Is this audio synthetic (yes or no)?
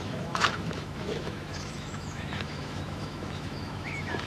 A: yes